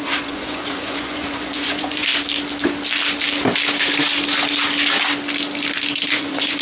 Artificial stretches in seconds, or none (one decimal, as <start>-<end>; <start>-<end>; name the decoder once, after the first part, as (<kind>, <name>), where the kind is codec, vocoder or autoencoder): 0.0-2.1 (vocoder, Vocos); 6.1-6.6